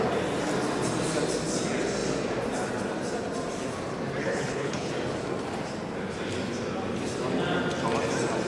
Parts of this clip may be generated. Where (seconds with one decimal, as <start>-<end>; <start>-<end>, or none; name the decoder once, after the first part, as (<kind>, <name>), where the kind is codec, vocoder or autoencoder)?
4.2-4.9 (codec, HILCodec)

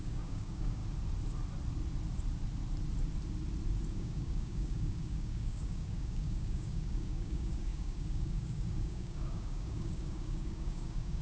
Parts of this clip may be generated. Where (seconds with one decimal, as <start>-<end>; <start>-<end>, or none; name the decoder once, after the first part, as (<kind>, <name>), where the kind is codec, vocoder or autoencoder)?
0.0-0.8 (codec, DAC); 3.9-11.2

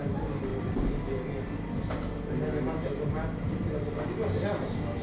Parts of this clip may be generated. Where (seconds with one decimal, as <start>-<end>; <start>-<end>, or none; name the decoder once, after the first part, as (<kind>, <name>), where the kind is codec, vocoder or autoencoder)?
none

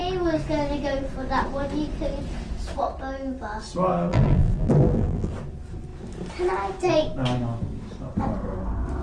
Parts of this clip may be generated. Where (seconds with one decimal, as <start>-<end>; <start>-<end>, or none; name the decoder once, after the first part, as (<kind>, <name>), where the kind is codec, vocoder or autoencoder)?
4.1-5.3 (vocoder, BigVGAN v2)

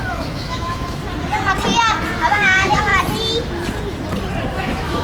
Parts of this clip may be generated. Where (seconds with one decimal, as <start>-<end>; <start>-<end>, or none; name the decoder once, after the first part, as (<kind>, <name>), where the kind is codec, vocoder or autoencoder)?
0.0-1.0 (autoencoder, DAC-VAE); 2.3-2.9; 4.5-5.0

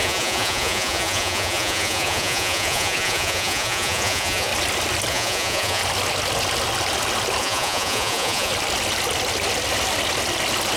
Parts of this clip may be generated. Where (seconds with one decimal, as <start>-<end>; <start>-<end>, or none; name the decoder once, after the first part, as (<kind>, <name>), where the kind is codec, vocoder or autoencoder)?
0.0-4.5 (vocoder, Vocos); 5.1-5.8; 7.4-8.5

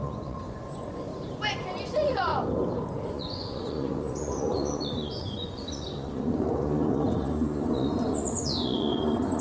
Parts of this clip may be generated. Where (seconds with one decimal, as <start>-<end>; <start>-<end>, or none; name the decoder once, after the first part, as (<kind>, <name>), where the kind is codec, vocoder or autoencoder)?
0.0-1.1 (vocoder, Vocos); 1.8-2.3; 3.1-9.4

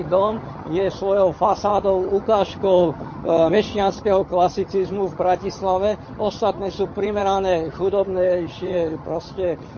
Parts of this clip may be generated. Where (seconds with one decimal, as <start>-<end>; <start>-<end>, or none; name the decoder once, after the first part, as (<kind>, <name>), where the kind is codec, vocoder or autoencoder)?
0.0-9.8 (vocoder, HiFi-GAN)